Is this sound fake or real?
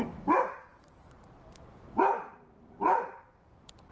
fake